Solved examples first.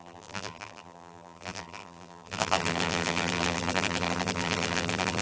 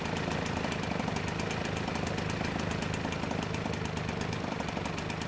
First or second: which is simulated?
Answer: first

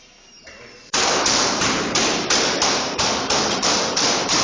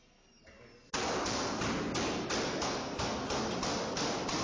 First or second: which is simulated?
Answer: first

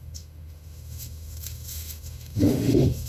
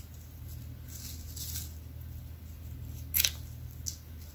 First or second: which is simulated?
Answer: first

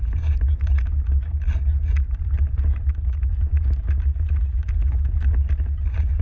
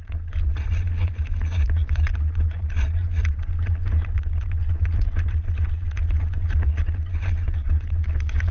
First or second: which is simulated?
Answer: second